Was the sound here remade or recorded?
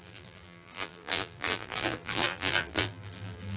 remade